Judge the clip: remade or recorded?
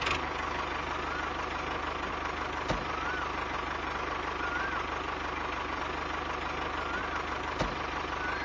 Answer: recorded